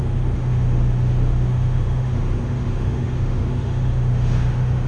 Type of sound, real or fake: fake